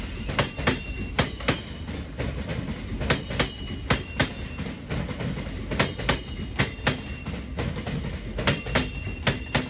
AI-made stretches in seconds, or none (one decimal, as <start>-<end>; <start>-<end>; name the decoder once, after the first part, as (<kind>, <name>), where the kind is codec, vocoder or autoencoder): none